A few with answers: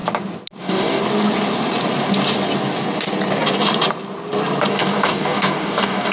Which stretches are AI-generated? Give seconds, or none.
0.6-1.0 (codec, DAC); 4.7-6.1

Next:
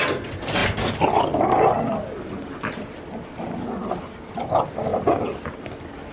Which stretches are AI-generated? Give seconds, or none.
none

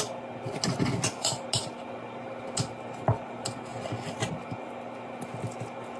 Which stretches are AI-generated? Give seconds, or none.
none

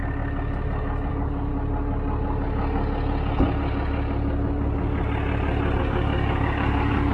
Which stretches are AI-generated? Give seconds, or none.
1.1-1.5 (codec, DAC); 5.8-7.1

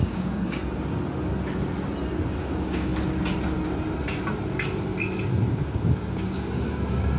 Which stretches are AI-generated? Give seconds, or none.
0.0-0.6 (codec, DAC); 2.4-2.9; 5.5-7.2